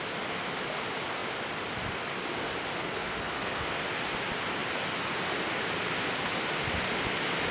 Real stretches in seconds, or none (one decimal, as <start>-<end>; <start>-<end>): 0.0-2.8; 3.8-7.5